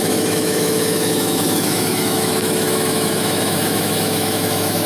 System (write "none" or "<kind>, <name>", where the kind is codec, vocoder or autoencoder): autoencoder, DAC-VAE